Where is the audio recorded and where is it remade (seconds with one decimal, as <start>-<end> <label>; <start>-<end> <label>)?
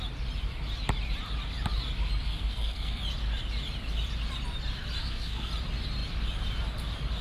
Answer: 0.0-2.2 recorded; 2.2-3.0 remade; 3.0-5.0 recorded; 5.0-5.5 remade; 5.5-7.2 recorded